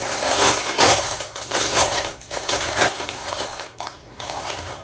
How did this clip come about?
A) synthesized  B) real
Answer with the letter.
A